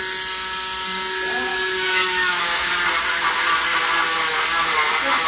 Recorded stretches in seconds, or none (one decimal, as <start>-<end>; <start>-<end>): 0.0-1.5; 2.7-5.3